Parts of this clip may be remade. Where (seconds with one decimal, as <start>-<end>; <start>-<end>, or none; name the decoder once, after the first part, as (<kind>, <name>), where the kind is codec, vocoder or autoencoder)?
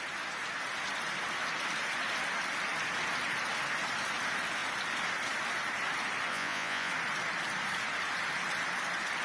6.3-6.9 (vocoder, Vocos)